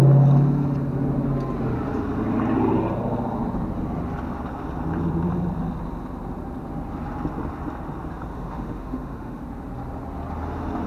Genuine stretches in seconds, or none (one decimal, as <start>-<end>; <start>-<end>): 0.0-8.3; 9.4-10.9